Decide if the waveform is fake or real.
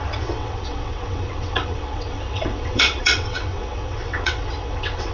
fake